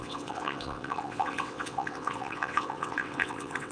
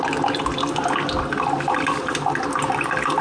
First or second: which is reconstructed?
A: first